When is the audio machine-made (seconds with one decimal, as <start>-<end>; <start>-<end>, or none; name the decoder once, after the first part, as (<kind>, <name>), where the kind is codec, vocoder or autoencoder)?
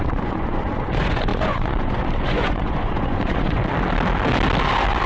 0.0-3.6 (vocoder, Vocos)